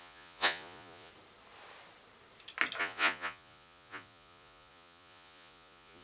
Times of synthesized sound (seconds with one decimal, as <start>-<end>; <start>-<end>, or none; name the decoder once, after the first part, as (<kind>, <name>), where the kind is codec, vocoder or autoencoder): 0.0-1.1 (vocoder, Vocos); 2.8-6.0